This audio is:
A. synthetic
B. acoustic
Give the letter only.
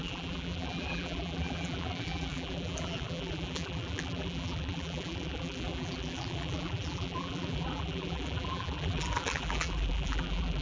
A